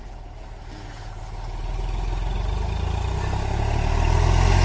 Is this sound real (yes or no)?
yes